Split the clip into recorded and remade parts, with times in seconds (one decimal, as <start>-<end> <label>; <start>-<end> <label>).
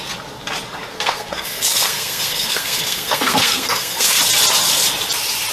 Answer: 0.0-0.9 recorded; 0.9-4.2 remade; 4.2-5.5 recorded